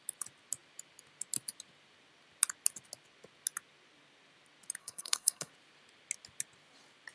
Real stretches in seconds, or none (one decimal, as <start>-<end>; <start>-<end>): 0.0-4.8; 5.5-7.1